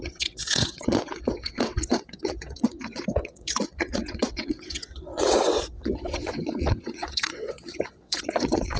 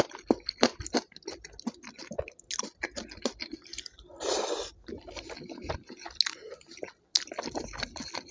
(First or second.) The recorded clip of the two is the second